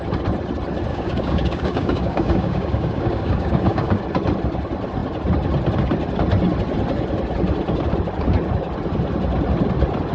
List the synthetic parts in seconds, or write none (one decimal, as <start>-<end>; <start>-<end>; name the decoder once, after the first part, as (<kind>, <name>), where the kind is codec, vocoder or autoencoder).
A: 0.9-4.0 (codec, DAC)